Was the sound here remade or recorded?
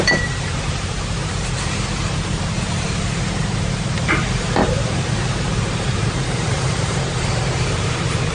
remade